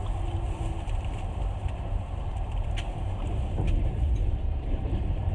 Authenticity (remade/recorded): remade